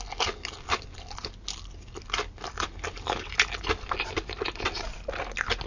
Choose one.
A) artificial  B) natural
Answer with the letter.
B